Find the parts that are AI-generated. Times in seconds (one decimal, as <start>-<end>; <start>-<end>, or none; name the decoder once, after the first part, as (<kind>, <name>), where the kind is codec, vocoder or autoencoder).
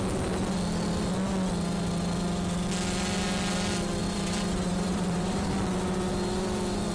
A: 4.0-5.5 (vocoder, BigVGAN v2)